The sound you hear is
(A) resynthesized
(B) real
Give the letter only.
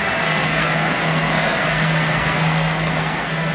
A